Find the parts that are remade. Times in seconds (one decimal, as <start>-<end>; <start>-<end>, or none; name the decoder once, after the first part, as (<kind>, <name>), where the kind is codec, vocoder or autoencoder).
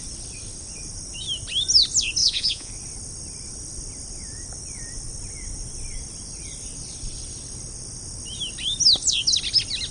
2.2-2.7 (vocoder, Vocos)